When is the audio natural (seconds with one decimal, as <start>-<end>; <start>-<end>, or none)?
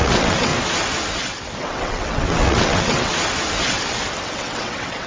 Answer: 0.5-1.6; 3.1-4.2